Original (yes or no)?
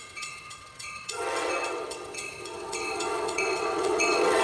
no